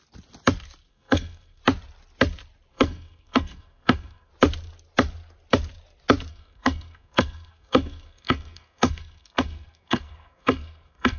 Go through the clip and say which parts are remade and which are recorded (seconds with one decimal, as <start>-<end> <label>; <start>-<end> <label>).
0.0-0.9 recorded; 0.9-1.6 remade; 1.6-2.7 recorded; 2.7-4.3 remade; 4.3-6.3 recorded; 6.3-11.2 remade